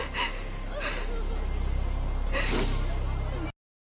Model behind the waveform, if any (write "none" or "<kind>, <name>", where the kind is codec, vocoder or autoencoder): none